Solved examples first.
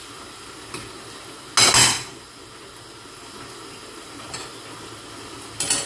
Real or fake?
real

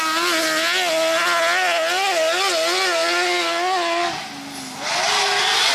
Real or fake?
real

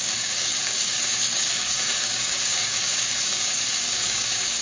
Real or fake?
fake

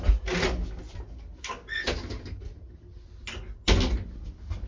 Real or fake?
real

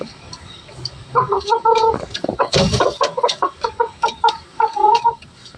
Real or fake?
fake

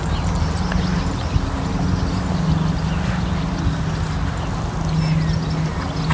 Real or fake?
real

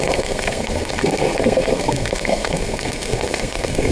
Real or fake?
fake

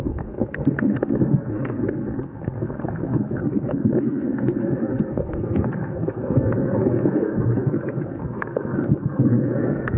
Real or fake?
fake